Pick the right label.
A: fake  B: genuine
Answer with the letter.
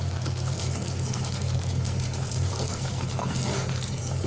A